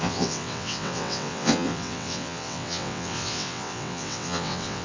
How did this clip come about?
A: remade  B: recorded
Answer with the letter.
A